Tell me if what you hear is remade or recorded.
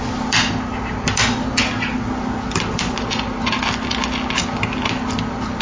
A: recorded